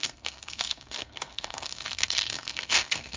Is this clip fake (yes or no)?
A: yes